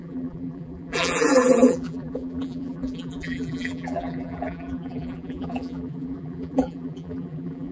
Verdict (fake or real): fake